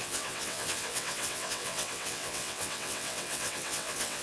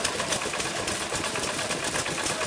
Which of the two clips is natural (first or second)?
second